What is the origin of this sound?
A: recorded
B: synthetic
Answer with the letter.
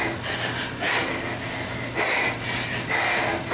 A